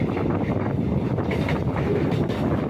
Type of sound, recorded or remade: recorded